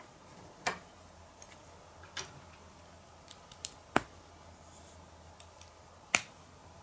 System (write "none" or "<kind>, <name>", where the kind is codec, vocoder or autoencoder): none